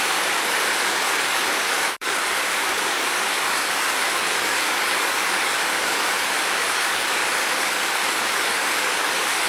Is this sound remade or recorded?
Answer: remade